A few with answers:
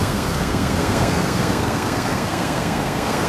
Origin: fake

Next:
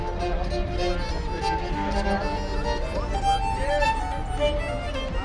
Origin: real